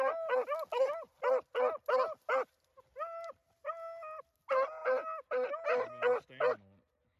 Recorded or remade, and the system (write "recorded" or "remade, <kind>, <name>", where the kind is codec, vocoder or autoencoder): recorded